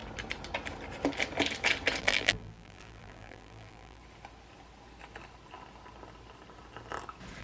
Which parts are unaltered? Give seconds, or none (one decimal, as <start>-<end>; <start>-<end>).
0.0-2.0; 4.0-7.4